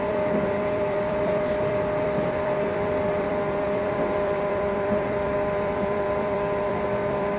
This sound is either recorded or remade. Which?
remade